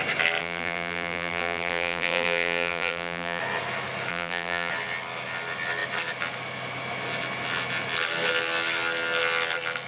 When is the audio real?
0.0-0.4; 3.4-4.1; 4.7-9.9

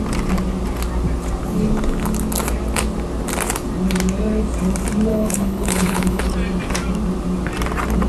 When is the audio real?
0.0-5.1; 6.2-8.1